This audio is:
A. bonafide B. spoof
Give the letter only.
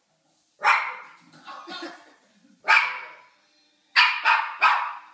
A